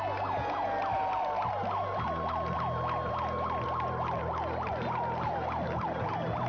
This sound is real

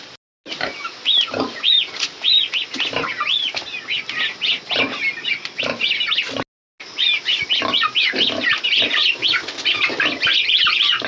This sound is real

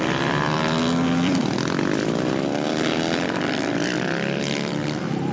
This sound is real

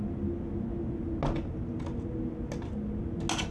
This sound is real